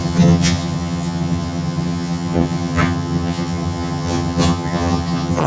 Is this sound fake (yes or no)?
yes